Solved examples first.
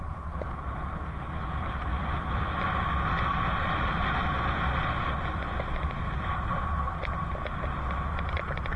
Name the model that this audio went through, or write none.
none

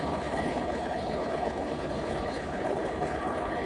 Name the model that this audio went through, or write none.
codec, HILCodec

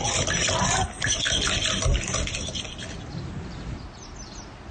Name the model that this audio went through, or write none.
none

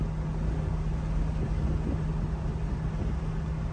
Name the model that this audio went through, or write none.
none